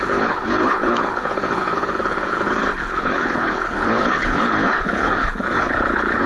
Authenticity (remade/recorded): remade